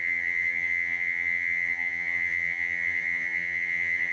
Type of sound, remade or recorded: remade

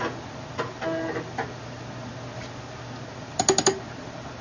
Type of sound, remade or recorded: recorded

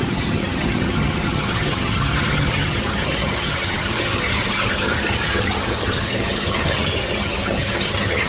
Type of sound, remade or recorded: remade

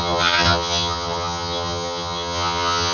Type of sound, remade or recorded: remade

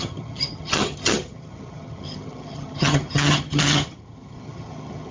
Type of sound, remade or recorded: remade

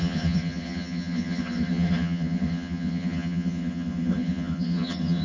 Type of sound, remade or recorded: remade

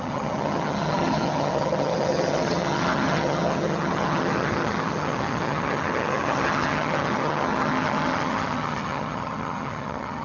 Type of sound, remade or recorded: remade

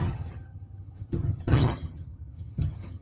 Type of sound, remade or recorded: remade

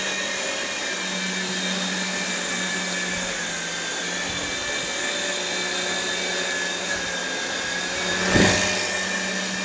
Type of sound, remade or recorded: recorded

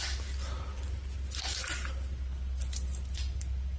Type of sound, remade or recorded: recorded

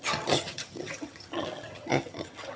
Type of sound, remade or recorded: remade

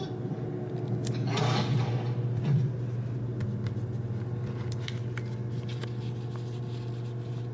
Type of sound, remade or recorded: recorded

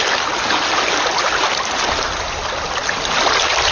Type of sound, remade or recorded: recorded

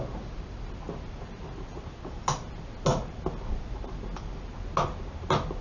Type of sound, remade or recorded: recorded